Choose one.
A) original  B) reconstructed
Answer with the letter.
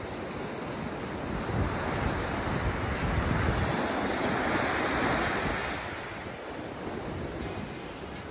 A